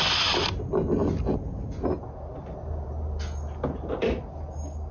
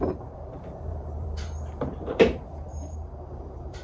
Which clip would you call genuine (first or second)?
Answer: first